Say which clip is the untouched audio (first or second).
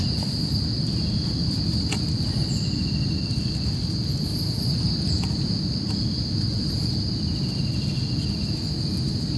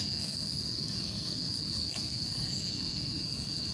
first